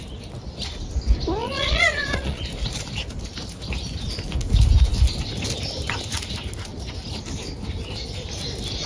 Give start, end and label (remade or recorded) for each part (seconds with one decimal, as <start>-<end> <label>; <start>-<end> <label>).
0.0-1.4 recorded; 1.4-2.4 remade; 2.4-8.9 recorded